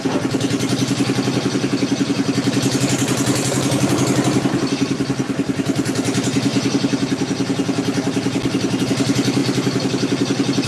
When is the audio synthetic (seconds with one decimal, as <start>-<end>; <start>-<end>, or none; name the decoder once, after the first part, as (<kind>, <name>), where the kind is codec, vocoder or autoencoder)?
none